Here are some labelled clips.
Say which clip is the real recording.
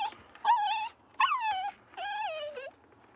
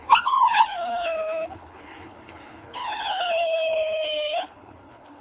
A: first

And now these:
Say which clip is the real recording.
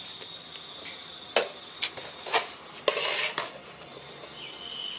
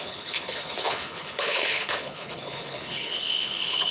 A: first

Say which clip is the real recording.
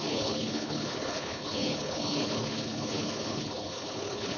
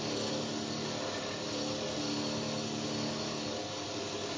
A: second